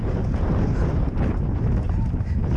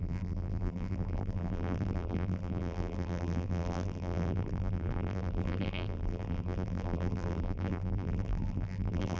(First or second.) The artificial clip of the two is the second